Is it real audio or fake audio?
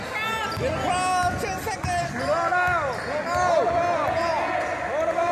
real